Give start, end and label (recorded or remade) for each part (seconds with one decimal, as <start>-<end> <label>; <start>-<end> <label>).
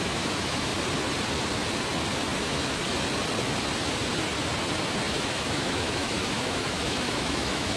0.0-0.7 remade; 0.7-2.4 recorded; 2.4-2.8 remade; 2.8-5.1 recorded; 5.1-7.8 remade